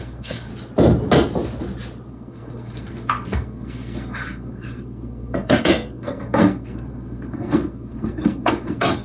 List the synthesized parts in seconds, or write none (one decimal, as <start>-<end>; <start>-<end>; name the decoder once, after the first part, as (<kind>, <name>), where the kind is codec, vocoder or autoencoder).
0.0-0.5 (codec, SNAC); 2.1-9.0